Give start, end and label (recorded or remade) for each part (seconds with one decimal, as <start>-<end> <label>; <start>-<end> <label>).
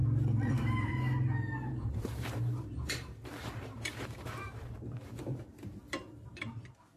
0.0-0.5 recorded; 0.5-0.9 remade; 0.9-1.7 recorded; 1.7-7.0 remade